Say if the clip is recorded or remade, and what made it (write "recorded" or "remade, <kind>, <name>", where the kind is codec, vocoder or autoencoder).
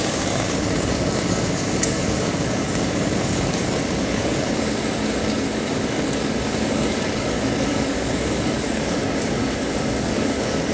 remade, codec, DAC